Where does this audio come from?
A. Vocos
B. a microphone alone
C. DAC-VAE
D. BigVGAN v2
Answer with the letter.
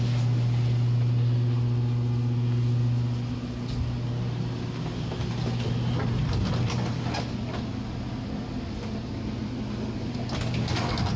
B